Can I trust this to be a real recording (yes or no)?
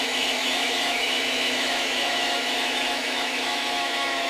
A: no